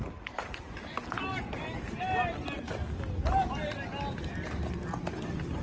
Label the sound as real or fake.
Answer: real